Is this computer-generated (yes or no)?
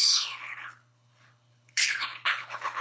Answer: yes